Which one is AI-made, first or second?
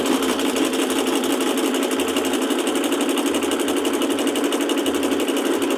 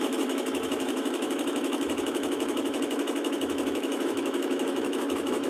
second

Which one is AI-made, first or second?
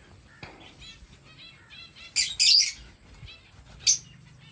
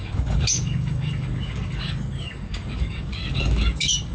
second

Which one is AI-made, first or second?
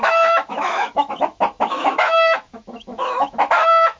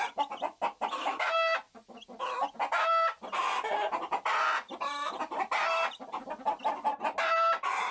first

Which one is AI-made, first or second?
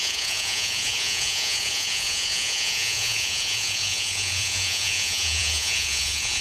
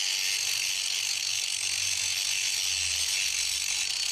first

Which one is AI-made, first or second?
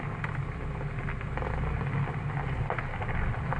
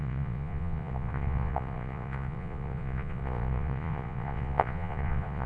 second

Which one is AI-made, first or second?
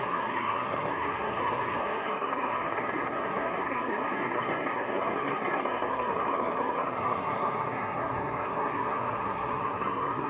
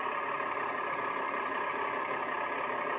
first